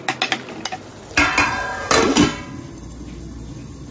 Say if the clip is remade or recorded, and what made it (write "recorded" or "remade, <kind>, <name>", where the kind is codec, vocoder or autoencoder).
recorded